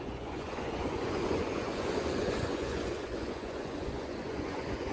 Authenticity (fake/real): fake